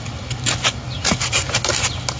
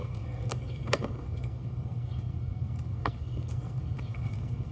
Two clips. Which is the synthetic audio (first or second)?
second